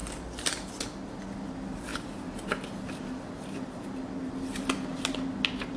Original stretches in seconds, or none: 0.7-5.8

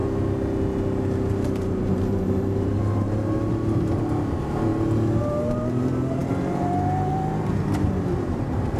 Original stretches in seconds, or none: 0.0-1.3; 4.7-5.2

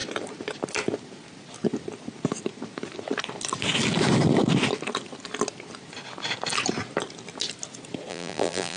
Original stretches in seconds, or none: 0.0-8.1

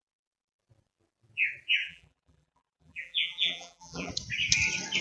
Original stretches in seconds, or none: 0.0-1.8; 4.1-5.0

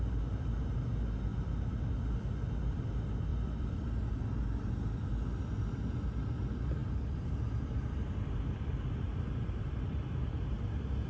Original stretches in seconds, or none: 0.0-3.3; 4.1-6.8; 9.9-11.1

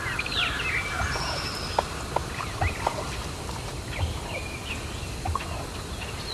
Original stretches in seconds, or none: 0.0-6.3

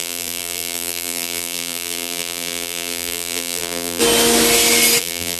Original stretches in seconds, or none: 4.0-5.0